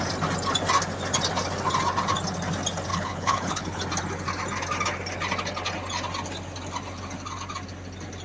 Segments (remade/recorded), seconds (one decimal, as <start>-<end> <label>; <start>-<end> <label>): 0.0-2.9 recorded; 2.9-3.8 remade; 3.8-8.2 recorded